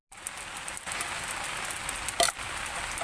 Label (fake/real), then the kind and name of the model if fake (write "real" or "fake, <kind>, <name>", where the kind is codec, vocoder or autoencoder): real